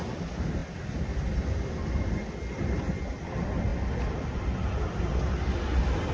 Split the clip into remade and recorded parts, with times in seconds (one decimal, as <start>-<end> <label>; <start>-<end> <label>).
0.0-6.1 recorded